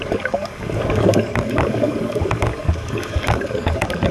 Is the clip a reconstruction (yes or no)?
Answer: yes